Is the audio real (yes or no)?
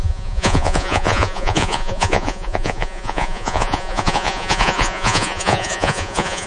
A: no